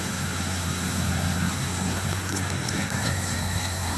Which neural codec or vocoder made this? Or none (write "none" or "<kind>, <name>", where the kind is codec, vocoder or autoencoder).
codec, SNAC